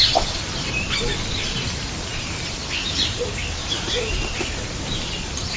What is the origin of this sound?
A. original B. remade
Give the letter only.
A